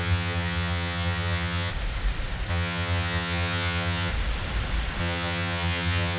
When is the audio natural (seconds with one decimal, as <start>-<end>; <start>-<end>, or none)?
1.7-2.5; 4.1-5.0